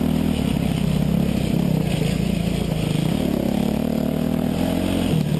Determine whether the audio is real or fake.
real